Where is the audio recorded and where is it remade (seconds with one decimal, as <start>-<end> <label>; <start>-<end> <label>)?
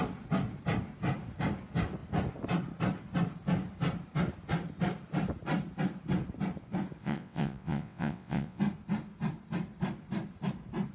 0.0-7.0 recorded; 7.0-8.6 remade; 8.6-10.9 recorded